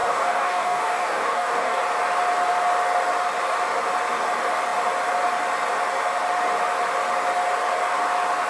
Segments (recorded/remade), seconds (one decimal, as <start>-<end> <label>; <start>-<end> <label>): 0.0-1.8 remade; 1.8-8.5 recorded